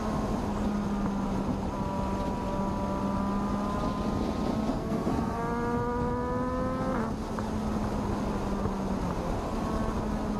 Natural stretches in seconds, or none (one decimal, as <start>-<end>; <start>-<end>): 0.0-4.7; 5.4-10.4